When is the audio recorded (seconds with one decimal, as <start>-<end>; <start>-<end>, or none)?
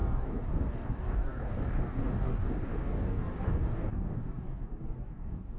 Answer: none